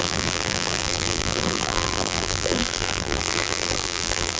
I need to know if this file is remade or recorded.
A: remade